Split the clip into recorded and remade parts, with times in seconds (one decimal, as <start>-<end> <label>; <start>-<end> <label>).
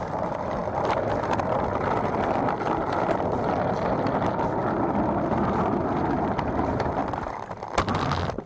0.0-7.0 recorded; 7.0-7.8 remade; 7.8-8.5 recorded